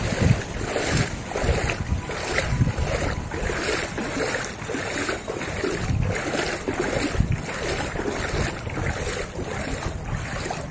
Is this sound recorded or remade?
remade